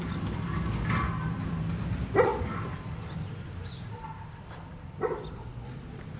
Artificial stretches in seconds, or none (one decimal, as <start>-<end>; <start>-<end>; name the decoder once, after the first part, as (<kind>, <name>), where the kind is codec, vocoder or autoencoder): none